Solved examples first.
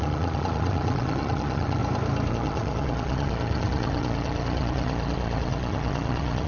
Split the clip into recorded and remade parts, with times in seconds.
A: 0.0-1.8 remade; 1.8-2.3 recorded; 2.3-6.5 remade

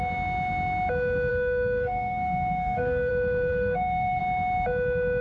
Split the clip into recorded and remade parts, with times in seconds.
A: 0.0-1.3 recorded; 1.3-3.1 remade; 3.1-3.5 recorded; 3.5-4.2 remade; 4.2-5.2 recorded

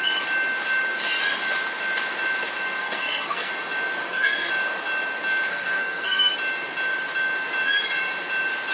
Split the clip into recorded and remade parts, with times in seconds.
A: 0.0-2.8 recorded; 2.8-3.5 remade; 3.5-4.0 recorded; 4.0-4.5 remade; 4.5-5.5 recorded; 5.5-6.3 remade; 6.3-8.7 recorded

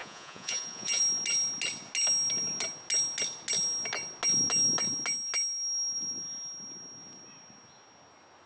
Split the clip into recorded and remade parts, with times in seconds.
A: 0.0-1.0 remade; 1.0-8.5 recorded

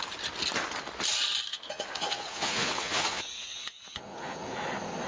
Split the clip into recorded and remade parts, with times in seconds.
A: 0.0-1.5 recorded; 1.5-4.6 remade; 4.6-5.1 recorded